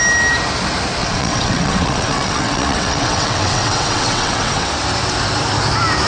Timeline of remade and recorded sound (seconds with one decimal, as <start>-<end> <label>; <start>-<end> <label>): 0.0-1.0 recorded; 1.0-4.7 remade; 4.7-6.1 recorded